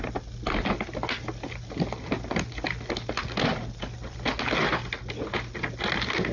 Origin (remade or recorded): recorded